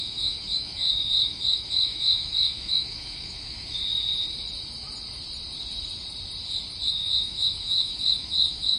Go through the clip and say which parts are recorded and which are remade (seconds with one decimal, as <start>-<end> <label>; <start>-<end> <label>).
0.0-3.8 remade; 3.8-6.9 recorded; 6.9-8.8 remade